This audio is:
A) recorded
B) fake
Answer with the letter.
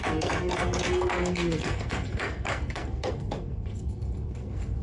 B